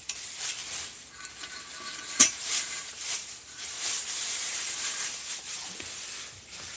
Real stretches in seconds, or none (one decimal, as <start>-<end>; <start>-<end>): 0.0-2.2; 5.6-6.8